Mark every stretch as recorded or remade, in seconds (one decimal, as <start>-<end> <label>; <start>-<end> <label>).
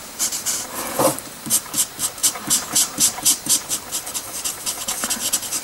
0.0-1.7 remade; 1.7-2.2 recorded; 2.2-3.7 remade; 3.7-5.6 recorded